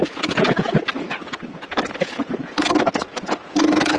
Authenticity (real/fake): fake